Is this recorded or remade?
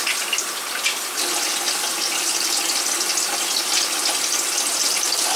recorded